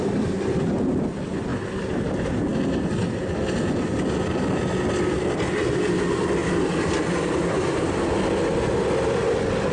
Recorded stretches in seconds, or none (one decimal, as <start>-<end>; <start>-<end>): 0.0-1.5; 2.0-6.4; 8.2-9.7